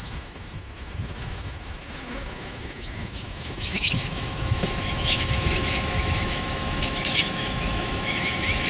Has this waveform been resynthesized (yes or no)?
yes